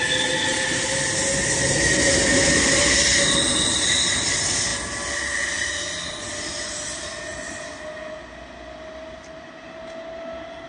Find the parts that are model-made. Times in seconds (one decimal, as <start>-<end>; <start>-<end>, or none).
none